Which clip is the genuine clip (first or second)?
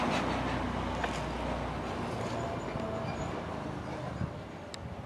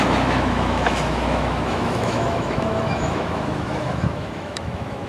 first